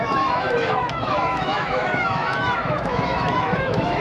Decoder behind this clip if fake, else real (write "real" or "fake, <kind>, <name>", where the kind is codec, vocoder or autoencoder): fake, autoencoder, DAC-VAE